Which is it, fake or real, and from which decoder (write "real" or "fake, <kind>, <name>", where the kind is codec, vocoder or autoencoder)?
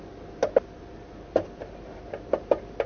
real